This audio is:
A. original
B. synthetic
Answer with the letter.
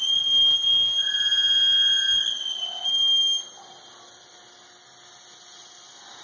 A